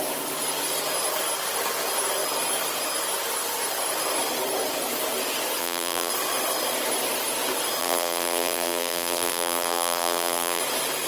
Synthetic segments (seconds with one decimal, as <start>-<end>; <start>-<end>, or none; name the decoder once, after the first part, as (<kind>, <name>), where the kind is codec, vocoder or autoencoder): 5.6-6.1 (vocoder, BigVGAN v2); 7.8-10.6